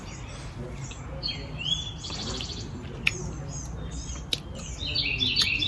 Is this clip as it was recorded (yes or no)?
yes